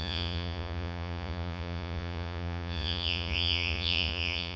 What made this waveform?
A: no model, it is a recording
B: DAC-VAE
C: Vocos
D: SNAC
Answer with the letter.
C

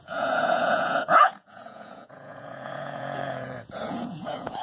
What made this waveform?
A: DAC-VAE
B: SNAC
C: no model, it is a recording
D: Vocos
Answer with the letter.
D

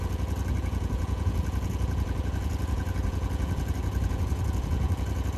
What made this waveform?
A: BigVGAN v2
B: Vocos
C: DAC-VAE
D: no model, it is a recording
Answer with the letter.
B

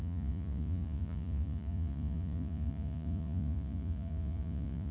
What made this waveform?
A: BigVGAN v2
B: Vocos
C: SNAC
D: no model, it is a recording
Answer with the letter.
B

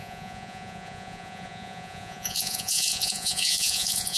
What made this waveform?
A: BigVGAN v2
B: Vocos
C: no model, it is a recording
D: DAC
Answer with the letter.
B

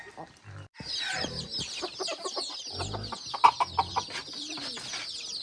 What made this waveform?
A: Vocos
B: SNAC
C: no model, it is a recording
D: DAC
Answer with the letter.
C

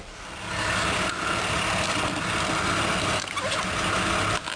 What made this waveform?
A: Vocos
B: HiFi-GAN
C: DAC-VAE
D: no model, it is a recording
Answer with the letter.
D